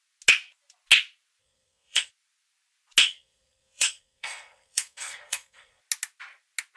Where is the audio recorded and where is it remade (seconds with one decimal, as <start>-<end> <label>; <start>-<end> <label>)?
0.0-1.4 recorded; 1.4-2.1 remade; 2.1-3.0 recorded; 3.0-5.8 remade; 5.8-6.8 recorded